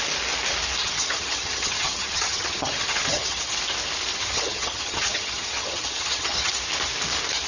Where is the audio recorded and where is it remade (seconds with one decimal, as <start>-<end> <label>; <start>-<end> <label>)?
0.0-0.8 recorded; 0.8-3.5 remade; 3.5-4.1 recorded; 4.1-6.5 remade; 6.5-7.5 recorded

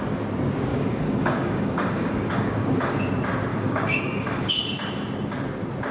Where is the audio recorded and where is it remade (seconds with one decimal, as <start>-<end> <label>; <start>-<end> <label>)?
0.0-0.7 recorded; 0.7-3.0 remade; 3.0-3.5 recorded; 3.5-4.5 remade; 4.5-5.9 recorded

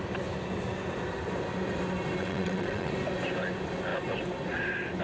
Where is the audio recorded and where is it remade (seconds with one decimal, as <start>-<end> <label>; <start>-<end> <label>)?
0.0-2.2 recorded; 2.2-2.9 remade; 2.9-5.0 recorded

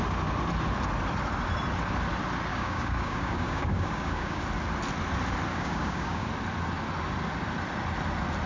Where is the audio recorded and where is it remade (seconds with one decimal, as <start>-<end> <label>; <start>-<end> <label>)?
0.0-2.5 recorded; 2.5-4.4 remade; 4.4-5.5 recorded; 5.5-6.3 remade; 6.3-8.5 recorded

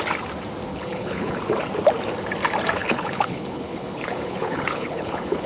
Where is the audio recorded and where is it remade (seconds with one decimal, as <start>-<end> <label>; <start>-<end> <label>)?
0.0-0.7 recorded; 0.7-1.4 remade; 1.4-2.8 recorded; 2.8-5.5 remade